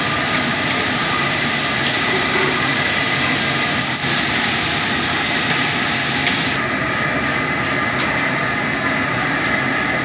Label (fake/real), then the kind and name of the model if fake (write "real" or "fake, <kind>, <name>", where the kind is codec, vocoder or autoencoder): real